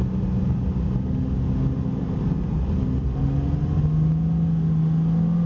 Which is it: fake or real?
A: real